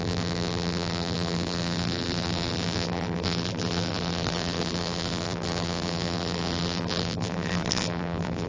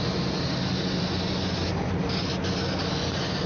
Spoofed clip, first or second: first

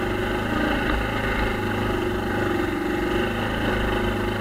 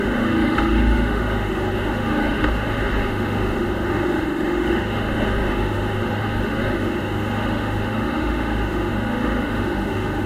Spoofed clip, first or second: second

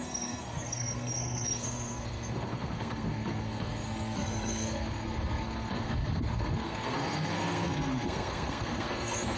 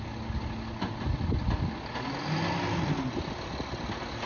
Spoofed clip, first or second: first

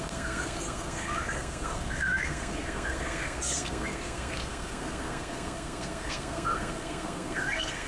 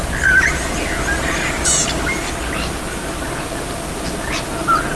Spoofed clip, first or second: first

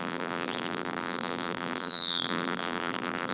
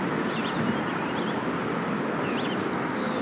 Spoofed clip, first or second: first